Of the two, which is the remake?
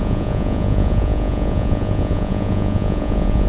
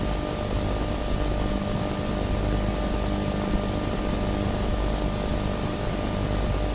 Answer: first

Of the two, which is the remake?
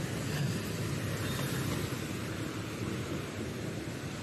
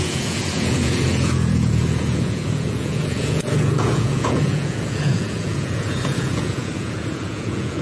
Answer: second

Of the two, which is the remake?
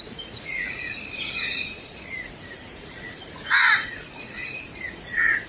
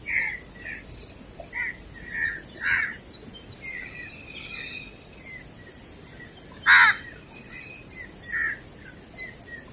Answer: first